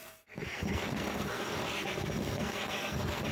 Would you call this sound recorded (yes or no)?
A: no